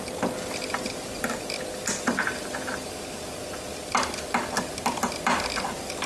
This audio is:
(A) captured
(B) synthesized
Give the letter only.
A